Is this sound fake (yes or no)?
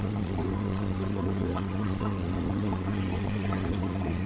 yes